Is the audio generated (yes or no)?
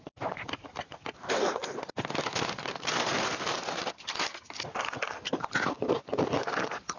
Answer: no